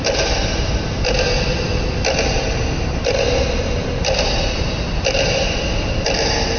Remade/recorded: recorded